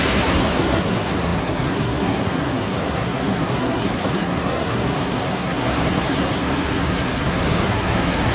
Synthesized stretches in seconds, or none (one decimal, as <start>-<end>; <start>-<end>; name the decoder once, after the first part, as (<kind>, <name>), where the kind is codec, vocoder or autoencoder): 0.0-8.3 (codec, SNAC)